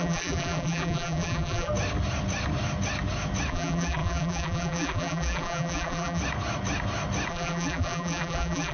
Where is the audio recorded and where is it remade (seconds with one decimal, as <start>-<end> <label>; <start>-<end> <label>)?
0.0-1.7 remade; 1.7-3.5 recorded; 3.5-6.2 remade; 6.2-7.3 recorded; 7.3-8.7 remade